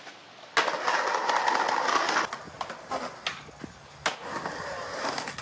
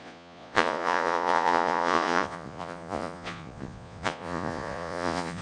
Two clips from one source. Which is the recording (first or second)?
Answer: first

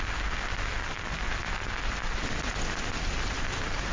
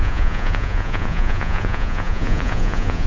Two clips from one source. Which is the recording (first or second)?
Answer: first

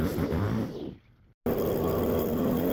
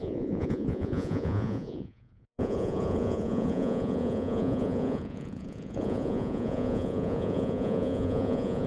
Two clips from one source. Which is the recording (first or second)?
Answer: first